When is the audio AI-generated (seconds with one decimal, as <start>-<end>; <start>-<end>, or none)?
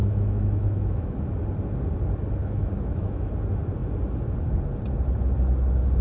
0.0-1.2; 2.4-3.3